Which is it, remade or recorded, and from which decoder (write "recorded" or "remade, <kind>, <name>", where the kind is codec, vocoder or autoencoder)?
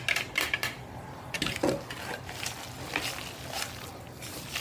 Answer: recorded